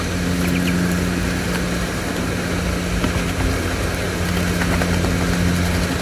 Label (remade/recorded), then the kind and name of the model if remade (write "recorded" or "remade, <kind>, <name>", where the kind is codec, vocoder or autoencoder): recorded